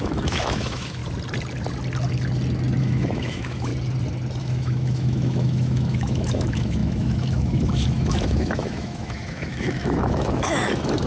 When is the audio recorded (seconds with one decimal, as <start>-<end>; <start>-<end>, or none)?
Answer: 1.0-2.8; 3.7-4.4